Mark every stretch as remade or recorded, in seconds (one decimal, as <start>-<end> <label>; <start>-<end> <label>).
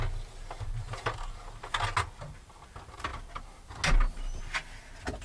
0.0-5.2 recorded